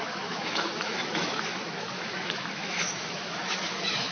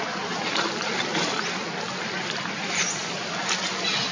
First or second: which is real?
second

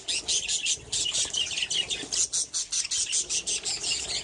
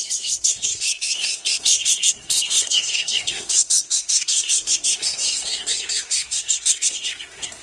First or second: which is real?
first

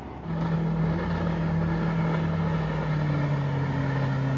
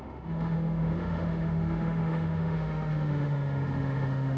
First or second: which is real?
first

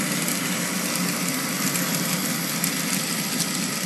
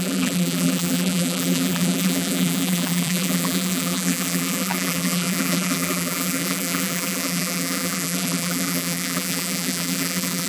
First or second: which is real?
first